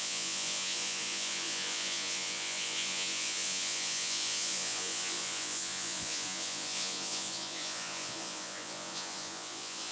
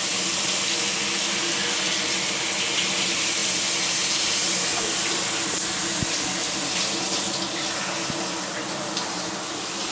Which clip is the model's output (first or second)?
first